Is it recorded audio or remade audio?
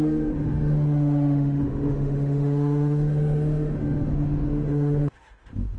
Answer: remade